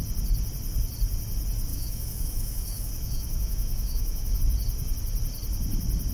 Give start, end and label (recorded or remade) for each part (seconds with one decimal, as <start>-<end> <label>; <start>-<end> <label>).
0.0-1.7 recorded; 1.7-4.4 remade; 4.4-6.1 recorded